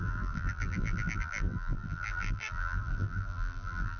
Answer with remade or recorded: remade